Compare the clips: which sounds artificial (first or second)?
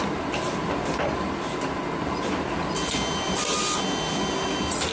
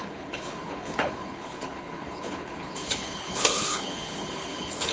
second